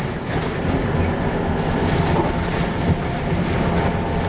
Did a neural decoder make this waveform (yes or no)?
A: no